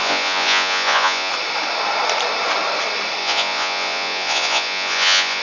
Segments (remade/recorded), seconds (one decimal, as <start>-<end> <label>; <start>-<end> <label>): 0.0-1.3 remade; 1.3-3.2 recorded; 3.2-5.4 remade